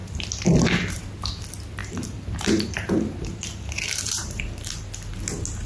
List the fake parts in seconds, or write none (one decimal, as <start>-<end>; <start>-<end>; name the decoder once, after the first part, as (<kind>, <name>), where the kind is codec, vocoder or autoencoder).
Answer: 0.0-1.0 (vocoder, BigVGAN v2); 1.8-4.4